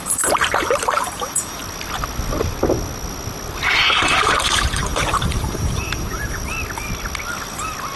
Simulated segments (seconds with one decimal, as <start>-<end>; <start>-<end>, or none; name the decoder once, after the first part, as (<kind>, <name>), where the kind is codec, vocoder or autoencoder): 0.0-1.6 (vocoder, BigVGAN v2); 4.0-6.4